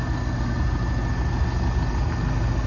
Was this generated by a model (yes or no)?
no